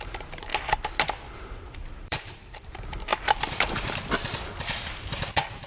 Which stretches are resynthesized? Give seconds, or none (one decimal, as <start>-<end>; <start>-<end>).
0.0-0.5; 1.4-3.1; 4.6-5.7